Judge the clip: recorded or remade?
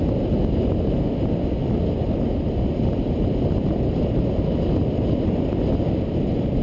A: recorded